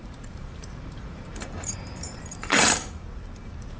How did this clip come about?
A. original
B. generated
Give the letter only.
B